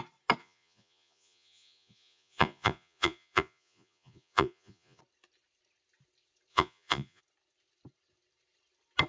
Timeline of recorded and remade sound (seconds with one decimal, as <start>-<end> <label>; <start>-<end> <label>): 0.0-0.4 recorded; 0.4-5.0 remade; 5.0-6.5 recorded; 6.5-7.2 remade; 7.2-9.1 recorded